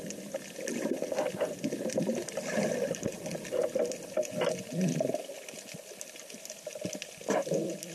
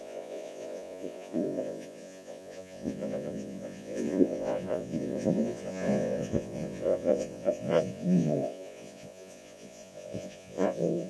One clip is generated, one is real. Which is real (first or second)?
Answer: first